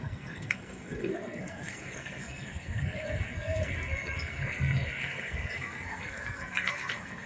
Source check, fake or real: fake